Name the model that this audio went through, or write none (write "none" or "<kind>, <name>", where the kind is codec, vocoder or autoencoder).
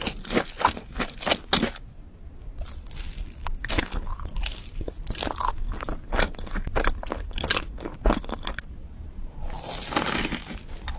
none